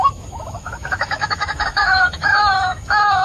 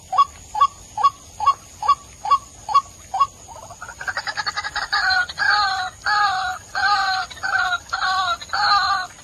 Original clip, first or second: second